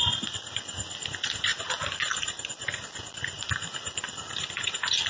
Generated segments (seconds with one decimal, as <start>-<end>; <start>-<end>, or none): none